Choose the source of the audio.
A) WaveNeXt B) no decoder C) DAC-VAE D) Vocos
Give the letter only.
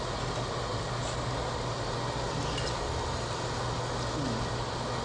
B